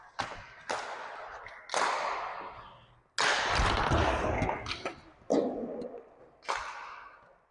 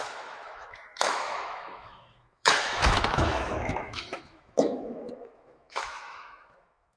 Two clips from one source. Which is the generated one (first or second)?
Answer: second